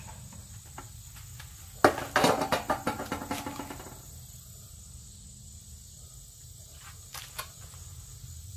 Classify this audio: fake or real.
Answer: real